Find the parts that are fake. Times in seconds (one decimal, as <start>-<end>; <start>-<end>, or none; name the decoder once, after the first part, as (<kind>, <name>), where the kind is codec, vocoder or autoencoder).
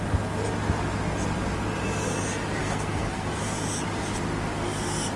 2.6-3.3 (codec, SNAC)